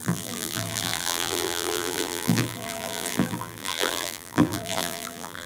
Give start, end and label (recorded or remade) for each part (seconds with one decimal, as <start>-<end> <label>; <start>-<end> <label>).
0.0-5.5 remade